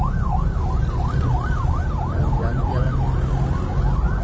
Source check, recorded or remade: recorded